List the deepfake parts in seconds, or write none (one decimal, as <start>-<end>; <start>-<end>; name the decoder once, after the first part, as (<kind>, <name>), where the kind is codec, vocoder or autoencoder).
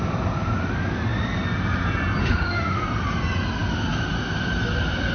2.2-2.8 (autoencoder, DAC-VAE)